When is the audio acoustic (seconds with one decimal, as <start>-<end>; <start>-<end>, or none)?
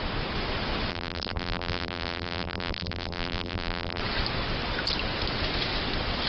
0.0-0.9; 4.0-6.3